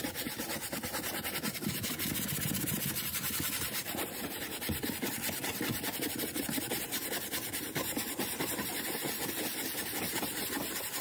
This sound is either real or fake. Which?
fake